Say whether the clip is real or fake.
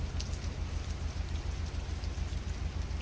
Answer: real